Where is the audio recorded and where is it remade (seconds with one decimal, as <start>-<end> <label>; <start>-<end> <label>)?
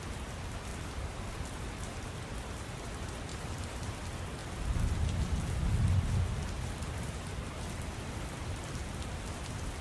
0.0-0.7 recorded; 0.7-1.2 remade; 1.2-3.3 recorded; 3.3-3.9 remade; 3.9-9.8 recorded